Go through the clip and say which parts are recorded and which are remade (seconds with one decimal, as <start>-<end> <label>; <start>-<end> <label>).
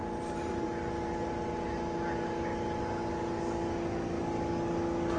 0.0-5.2 recorded